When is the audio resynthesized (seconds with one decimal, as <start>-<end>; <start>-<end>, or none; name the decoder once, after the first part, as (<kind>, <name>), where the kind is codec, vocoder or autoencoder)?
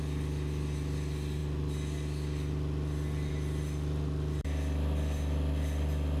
none